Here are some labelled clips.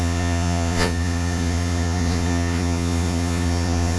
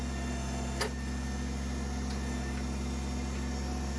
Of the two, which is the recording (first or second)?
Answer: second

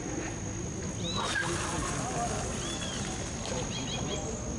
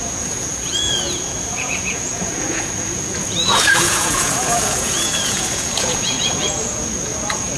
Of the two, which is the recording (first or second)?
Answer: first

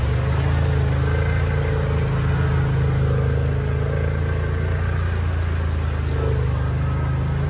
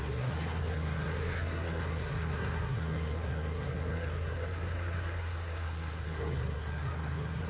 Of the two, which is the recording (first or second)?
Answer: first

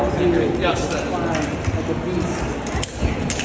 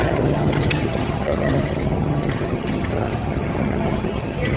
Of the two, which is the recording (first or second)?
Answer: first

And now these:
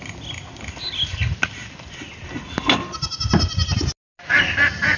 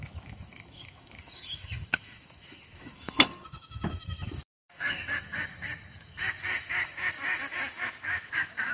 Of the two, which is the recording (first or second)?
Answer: first